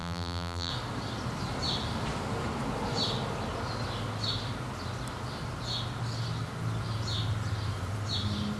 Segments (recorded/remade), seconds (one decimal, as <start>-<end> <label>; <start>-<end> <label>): 0.0-0.7 remade; 0.7-8.6 recorded